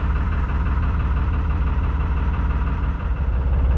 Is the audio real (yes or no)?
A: no